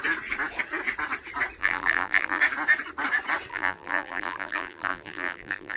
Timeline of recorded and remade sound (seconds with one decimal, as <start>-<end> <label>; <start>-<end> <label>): 0.0-1.6 recorded; 1.6-2.4 remade; 2.4-3.5 recorded; 3.5-5.8 remade